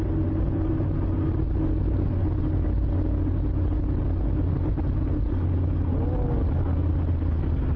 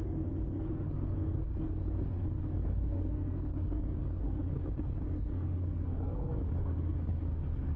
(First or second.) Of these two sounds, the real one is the first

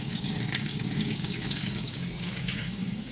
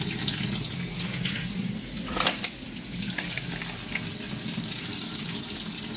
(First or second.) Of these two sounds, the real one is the second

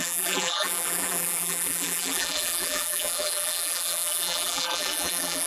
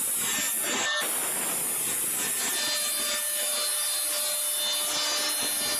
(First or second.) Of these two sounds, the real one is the second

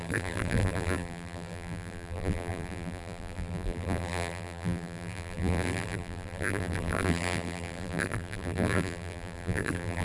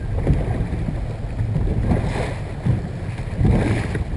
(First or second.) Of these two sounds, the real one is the second